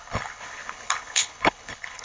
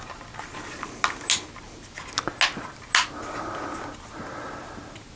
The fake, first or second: first